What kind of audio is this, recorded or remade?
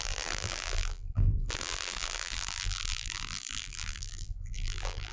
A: remade